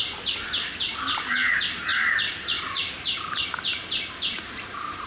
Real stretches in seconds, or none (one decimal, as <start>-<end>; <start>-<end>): 0.0-1.9